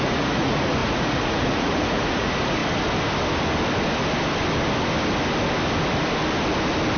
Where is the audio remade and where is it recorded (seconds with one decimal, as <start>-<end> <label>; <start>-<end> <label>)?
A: 0.0-2.6 remade; 2.6-7.0 recorded